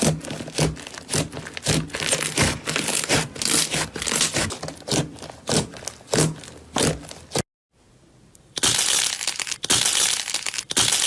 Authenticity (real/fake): real